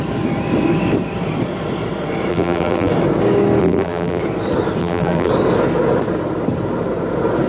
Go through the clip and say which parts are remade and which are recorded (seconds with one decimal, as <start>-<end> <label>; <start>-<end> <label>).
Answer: 0.0-2.3 recorded; 2.3-2.9 remade; 2.9-3.6 recorded; 3.6-4.2 remade; 4.2-4.8 recorded; 4.8-5.3 remade; 5.3-7.5 recorded

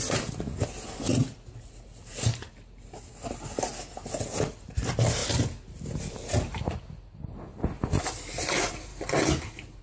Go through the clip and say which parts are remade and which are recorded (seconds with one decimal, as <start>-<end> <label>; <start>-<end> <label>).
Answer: 0.0-9.8 recorded

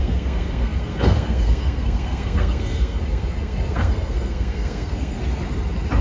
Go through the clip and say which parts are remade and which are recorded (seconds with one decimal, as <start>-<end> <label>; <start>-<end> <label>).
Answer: 0.0-5.2 remade; 5.2-6.0 recorded

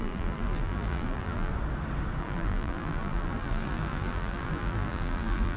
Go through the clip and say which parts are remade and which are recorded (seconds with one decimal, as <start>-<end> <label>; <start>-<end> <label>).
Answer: 0.0-1.5 remade; 1.5-2.2 recorded; 2.2-5.6 remade